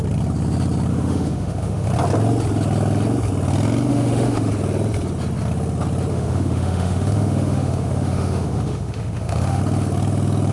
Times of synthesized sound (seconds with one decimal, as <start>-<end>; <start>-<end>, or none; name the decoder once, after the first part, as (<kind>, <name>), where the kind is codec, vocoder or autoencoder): 0.9-1.9 (autoencoder, DAC-VAE); 3.9-4.5; 6.1-9.6